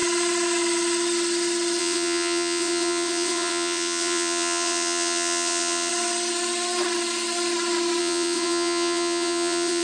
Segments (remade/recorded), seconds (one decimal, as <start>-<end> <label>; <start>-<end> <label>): 0.0-1.8 recorded; 1.8-5.9 remade; 5.9-8.0 recorded; 8.0-9.8 remade